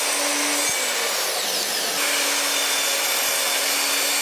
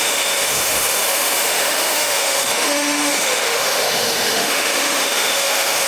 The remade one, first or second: second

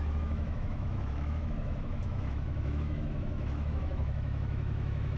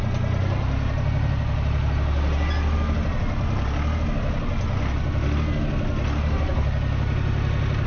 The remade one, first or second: first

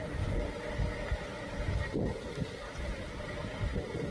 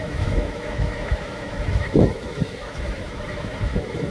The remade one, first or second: second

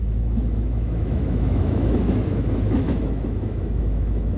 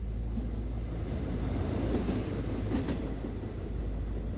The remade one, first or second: first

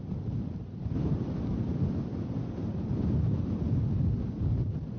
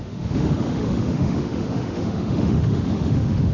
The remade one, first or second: second